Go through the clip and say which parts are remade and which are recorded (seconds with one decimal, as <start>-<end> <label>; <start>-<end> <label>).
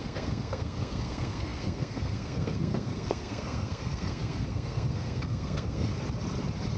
0.0-5.9 remade; 5.9-6.8 recorded